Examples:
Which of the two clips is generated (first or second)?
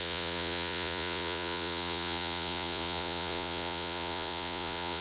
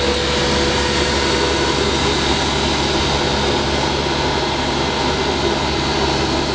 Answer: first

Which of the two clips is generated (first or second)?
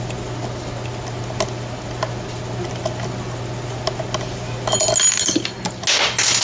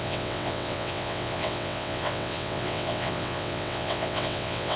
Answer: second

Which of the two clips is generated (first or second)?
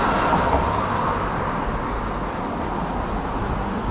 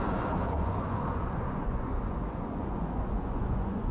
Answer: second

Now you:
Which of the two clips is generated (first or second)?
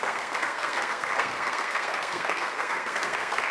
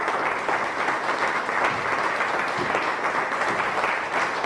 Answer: first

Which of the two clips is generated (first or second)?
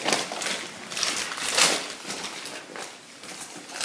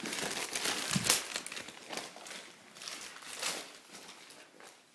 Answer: first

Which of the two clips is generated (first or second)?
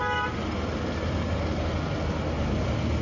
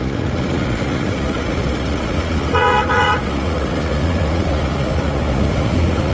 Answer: second